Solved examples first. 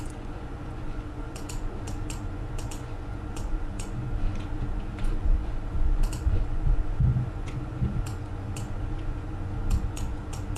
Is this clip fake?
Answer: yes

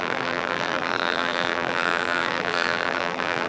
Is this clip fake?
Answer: yes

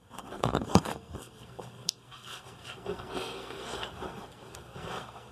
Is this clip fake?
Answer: yes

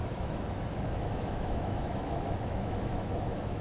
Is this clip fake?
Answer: yes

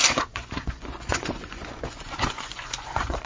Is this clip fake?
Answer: yes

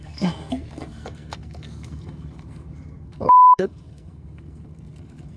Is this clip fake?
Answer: yes